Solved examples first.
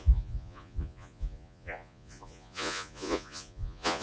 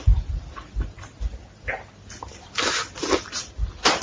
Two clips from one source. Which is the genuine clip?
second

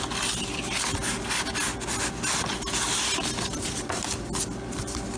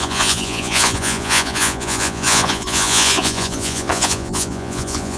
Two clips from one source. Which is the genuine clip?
first